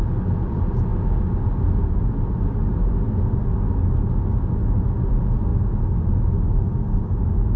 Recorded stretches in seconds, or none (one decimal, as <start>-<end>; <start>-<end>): 0.0-7.6